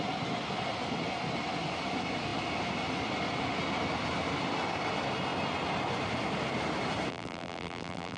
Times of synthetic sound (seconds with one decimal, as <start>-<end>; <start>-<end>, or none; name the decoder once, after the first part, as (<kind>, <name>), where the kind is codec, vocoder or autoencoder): 7.1-8.2 (vocoder, BigVGAN v2)